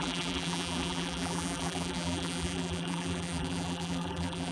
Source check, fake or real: fake